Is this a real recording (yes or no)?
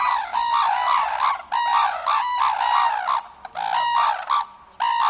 yes